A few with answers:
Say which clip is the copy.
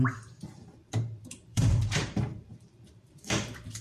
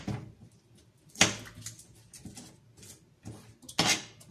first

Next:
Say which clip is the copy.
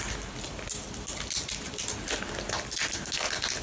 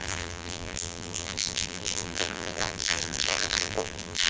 second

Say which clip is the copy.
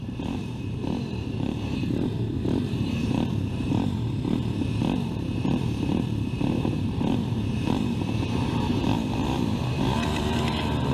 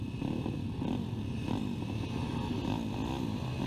first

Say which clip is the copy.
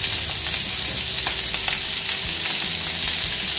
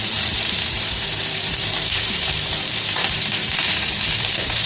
second